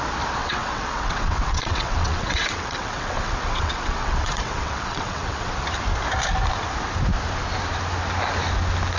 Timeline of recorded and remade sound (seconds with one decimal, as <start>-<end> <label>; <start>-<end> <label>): 0.0-0.4 recorded; 0.4-5.5 remade; 5.5-9.0 recorded